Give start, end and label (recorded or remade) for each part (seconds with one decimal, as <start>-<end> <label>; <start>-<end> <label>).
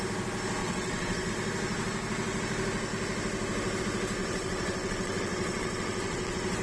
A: 0.0-0.6 recorded; 0.6-1.3 remade; 1.3-4.2 recorded; 4.2-6.6 remade